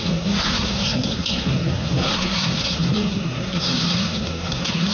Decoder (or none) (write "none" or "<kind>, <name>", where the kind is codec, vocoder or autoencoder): codec, SNAC